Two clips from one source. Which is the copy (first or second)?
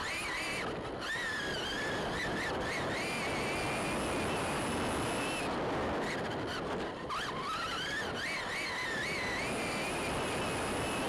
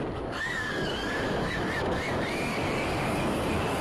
second